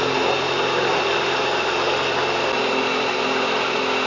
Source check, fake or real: real